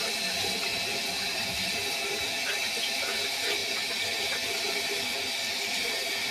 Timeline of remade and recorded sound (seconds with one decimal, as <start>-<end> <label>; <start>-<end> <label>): 0.0-3.6 recorded; 3.6-5.3 remade; 5.3-6.3 recorded